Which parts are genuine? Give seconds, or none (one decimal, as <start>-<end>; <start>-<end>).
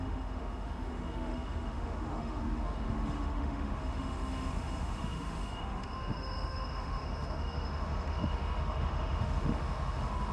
none